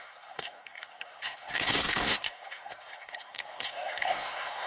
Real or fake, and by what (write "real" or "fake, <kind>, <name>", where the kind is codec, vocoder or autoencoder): fake, codec, SNAC